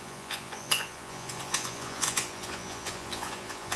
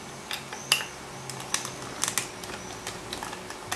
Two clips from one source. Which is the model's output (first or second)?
first